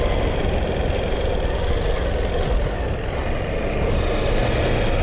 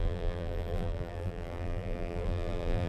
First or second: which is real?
first